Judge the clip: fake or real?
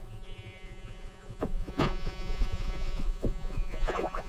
fake